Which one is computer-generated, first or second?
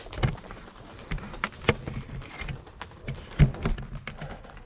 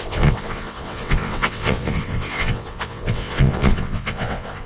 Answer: second